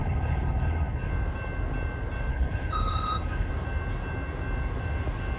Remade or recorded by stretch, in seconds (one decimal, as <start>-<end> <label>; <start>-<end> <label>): 0.0-1.1 remade; 1.1-2.3 recorded; 2.3-3.5 remade; 3.5-5.4 recorded